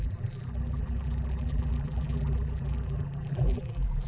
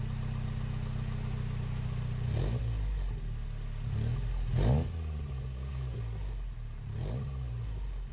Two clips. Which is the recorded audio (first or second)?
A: second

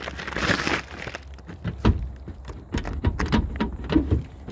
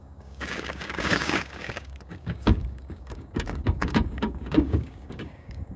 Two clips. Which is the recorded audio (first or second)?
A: first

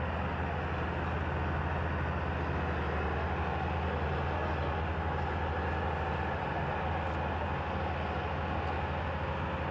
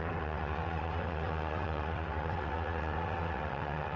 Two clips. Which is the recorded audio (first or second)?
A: first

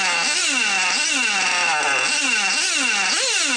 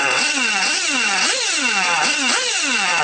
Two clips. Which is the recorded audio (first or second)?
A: first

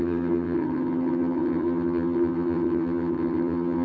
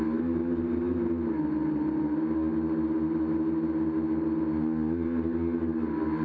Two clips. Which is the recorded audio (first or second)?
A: second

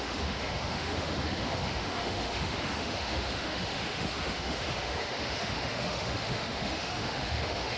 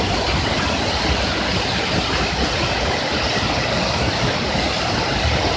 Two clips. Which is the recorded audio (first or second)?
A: second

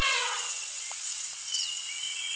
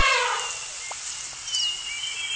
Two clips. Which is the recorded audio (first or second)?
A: second